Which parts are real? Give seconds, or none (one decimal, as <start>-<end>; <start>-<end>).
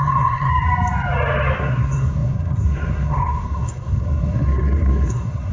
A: 0.5-1.6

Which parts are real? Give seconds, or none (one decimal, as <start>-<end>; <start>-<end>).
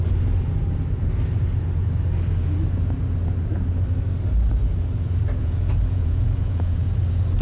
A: 0.0-5.4; 6.8-7.4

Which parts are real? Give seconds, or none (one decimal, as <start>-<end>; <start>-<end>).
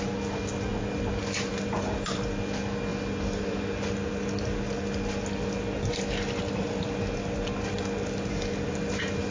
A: 0.0-9.3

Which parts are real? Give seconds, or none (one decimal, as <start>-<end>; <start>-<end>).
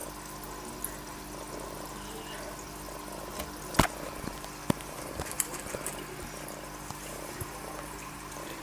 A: 0.0-4.8; 5.9-7.5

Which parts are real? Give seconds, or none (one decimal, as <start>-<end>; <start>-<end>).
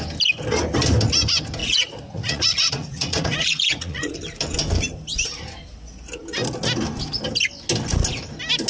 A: 0.0-1.6; 4.2-8.7